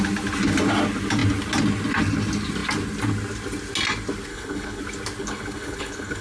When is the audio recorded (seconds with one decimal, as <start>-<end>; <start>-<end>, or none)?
0.0-4.3; 4.8-5.2